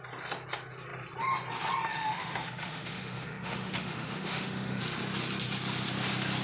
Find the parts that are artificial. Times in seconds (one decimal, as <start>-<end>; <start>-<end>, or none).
1.9-4.8